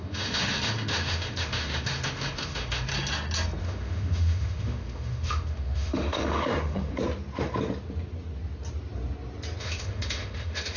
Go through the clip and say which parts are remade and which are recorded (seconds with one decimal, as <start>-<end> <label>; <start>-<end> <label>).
0.0-2.9 remade; 2.9-3.6 recorded; 3.6-6.9 remade; 6.9-9.6 recorded; 9.6-10.8 remade